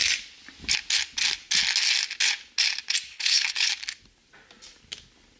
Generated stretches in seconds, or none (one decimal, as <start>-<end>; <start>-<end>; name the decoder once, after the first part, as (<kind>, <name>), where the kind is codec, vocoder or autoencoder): 3.1-3.7 (codec, HILCodec)